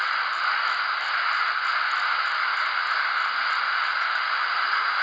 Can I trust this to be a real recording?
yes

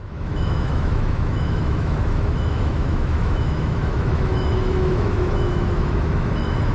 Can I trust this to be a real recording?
no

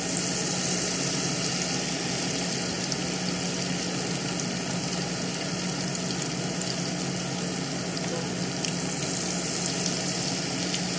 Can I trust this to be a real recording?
yes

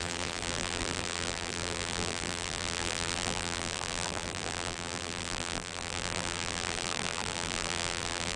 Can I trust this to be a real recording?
no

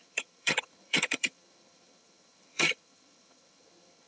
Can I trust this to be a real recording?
no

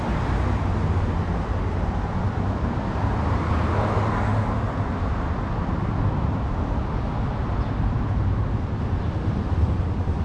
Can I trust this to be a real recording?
yes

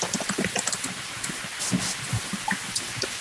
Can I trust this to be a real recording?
yes